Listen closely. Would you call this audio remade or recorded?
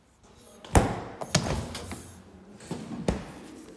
recorded